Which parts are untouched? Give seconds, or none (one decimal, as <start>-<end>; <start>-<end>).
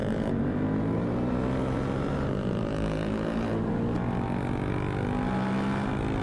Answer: 3.7-6.2